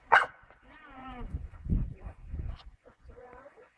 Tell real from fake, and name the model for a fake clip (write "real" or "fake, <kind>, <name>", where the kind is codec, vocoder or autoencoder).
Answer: fake, vocoder, Vocos